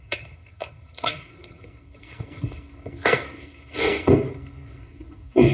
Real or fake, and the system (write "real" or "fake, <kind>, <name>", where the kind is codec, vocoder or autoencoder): fake, codec, SNAC